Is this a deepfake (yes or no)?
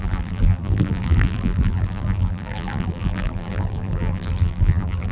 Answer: yes